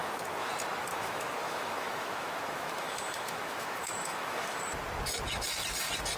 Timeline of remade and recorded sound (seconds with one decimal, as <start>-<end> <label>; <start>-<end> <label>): 0.0-0.5 remade; 0.5-0.9 recorded; 0.9-4.6 remade; 4.6-6.2 recorded